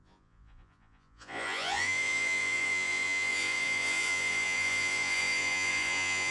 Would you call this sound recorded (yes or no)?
no